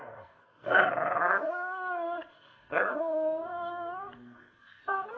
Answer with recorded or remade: remade